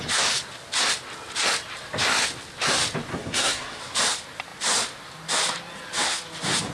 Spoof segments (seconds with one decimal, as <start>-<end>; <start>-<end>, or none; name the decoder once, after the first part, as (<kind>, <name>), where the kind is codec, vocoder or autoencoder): 3.1-3.8 (codec, SNAC)